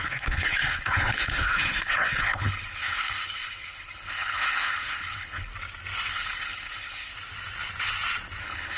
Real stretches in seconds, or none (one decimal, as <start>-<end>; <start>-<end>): 5.5-6.1; 7.1-8.4